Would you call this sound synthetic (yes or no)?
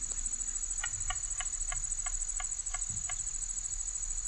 no